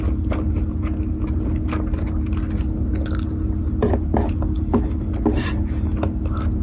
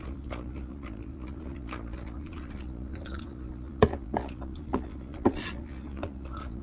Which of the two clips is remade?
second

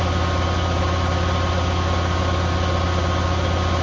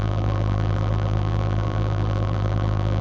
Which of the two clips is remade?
second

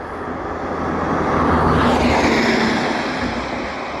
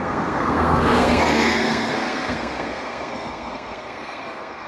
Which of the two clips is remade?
second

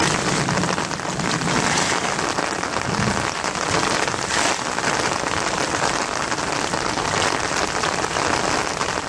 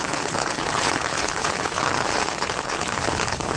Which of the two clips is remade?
second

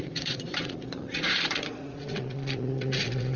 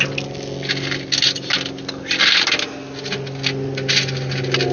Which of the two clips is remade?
first